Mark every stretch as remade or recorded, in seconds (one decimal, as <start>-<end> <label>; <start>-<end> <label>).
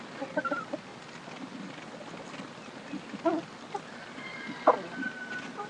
0.0-5.7 recorded